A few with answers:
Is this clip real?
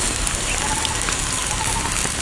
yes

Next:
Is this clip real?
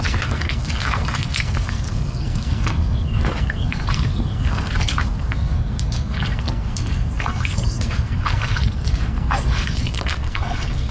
no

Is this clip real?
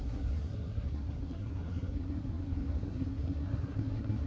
no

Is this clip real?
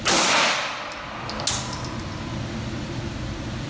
yes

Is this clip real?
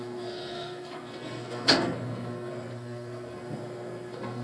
no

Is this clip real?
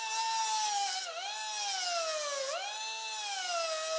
yes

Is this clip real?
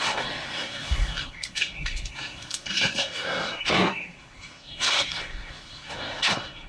no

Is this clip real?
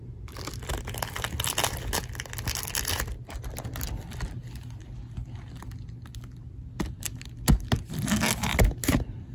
yes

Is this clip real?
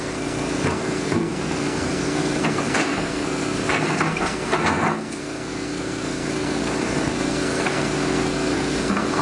no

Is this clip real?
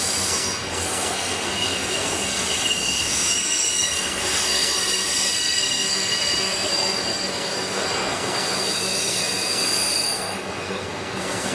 no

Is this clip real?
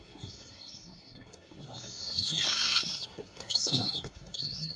no